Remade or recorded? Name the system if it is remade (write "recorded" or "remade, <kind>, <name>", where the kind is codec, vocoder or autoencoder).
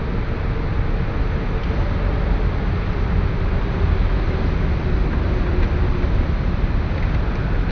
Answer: recorded